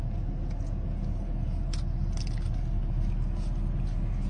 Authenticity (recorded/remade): recorded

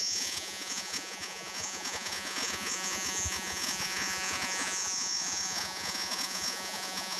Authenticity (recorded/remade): remade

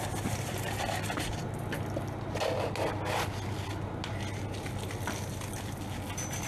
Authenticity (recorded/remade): recorded